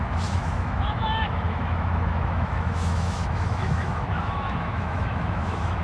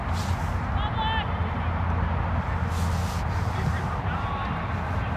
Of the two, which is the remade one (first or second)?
first